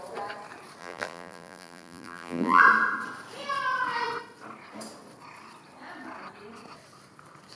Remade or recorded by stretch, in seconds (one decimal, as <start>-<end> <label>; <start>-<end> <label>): 0.0-0.8 recorded; 0.8-2.6 remade; 2.6-7.6 recorded